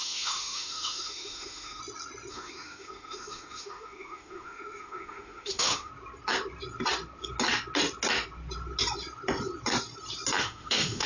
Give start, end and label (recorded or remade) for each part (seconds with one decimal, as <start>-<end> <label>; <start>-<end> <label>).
0.0-1.8 remade; 1.8-2.3 recorded; 2.3-5.9 remade; 5.9-10.4 recorded; 10.4-11.1 remade